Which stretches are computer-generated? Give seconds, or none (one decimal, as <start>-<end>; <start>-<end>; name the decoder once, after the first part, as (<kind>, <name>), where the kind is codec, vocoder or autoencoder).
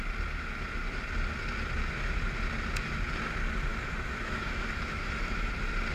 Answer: 3.7-5.5 (autoencoder, DAC-VAE)